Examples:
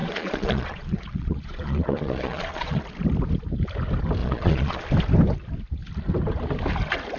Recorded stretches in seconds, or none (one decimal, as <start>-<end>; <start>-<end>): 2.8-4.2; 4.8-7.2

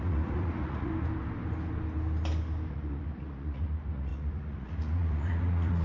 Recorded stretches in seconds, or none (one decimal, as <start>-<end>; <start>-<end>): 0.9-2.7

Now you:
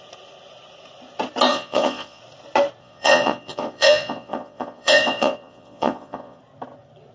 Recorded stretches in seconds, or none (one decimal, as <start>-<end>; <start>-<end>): 0.0-1.5; 2.2-2.8; 6.4-7.1